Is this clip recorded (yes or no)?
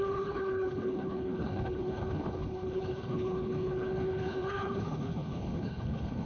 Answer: no